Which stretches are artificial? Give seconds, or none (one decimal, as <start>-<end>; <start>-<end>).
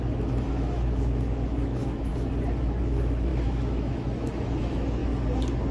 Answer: 0.0-2.1; 2.8-5.0